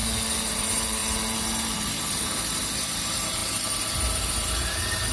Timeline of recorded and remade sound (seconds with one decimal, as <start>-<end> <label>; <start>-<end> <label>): 0.0-0.5 recorded; 0.5-5.1 remade